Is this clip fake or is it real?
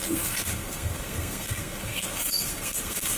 fake